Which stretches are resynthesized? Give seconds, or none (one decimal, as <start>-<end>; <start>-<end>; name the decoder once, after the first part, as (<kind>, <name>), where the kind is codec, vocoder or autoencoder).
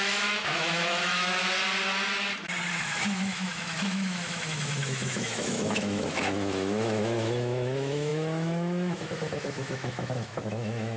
0.0-1.4 (autoencoder, DAC-VAE); 2.7-11.0